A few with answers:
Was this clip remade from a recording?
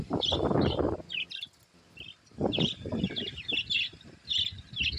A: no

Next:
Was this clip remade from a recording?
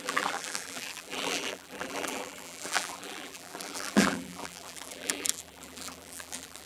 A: yes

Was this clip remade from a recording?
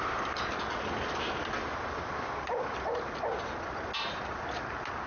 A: no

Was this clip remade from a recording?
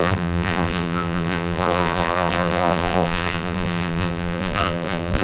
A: yes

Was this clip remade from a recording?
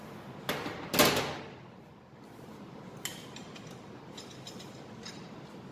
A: no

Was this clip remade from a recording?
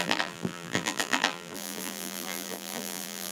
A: yes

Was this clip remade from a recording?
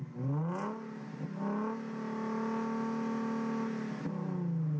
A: no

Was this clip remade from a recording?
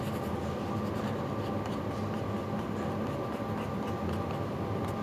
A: no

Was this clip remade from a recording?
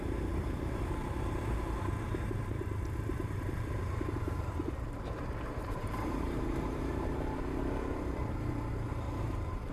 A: yes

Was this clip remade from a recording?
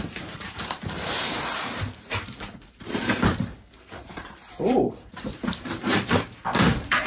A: yes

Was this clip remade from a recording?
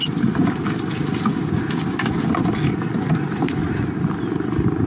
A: no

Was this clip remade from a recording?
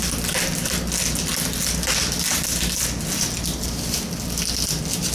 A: no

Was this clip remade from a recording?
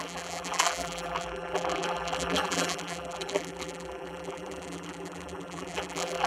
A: yes